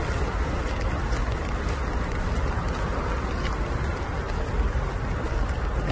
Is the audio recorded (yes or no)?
yes